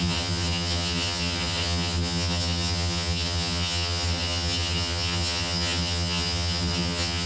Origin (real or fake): fake